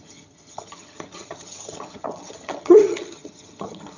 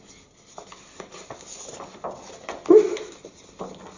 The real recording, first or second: second